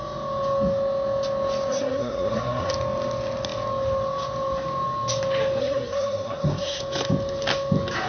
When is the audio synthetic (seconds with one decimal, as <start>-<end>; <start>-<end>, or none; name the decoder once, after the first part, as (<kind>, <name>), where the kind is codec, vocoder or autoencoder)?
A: 1.7-2.7 (codec, SNAC); 5.6-6.8